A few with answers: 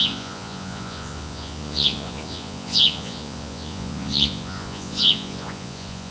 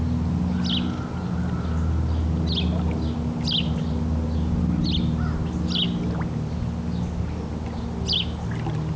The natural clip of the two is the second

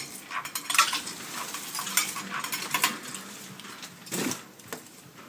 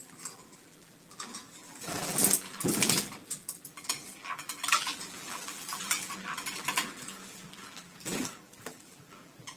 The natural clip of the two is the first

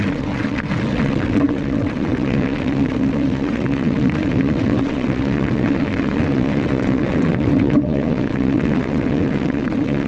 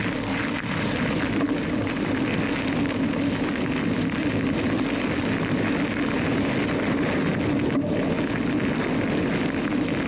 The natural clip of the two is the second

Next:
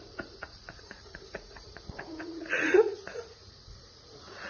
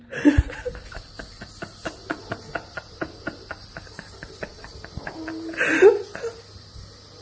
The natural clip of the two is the second